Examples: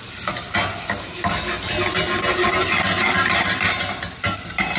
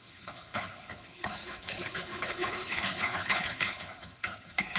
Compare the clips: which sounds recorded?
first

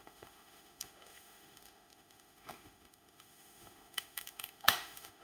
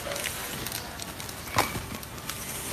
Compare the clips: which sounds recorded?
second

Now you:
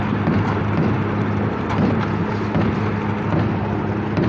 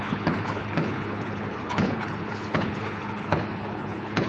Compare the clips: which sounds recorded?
first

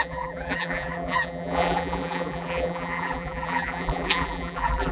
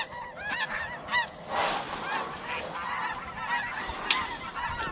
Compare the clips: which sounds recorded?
second